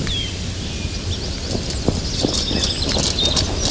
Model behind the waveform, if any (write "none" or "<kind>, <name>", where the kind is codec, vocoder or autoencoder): none